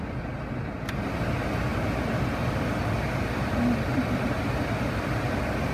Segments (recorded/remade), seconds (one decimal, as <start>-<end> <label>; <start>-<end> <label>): 0.0-5.7 recorded